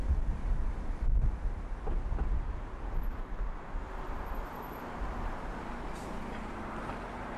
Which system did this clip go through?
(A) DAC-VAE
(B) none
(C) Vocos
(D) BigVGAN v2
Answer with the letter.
B